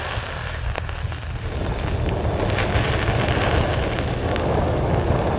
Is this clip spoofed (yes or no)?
no